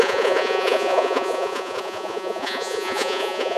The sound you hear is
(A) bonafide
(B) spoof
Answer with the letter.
B